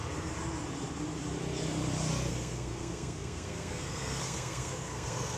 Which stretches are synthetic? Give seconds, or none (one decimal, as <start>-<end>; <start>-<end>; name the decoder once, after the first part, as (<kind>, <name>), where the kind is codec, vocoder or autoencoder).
2.3-5.4 (codec, SNAC)